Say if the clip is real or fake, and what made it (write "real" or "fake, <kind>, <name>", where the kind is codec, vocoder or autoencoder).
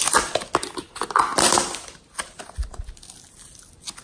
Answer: real